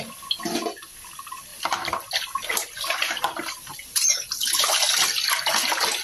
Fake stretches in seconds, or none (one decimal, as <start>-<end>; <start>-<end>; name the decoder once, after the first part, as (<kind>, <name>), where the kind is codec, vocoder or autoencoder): 1.5-4.1 (vocoder, BigVGAN v2)